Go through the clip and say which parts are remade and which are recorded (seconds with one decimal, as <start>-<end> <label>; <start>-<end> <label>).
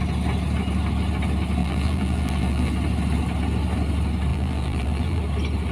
0.0-1.6 recorded; 1.6-2.7 remade; 2.7-4.3 recorded; 4.3-5.2 remade; 5.2-5.7 recorded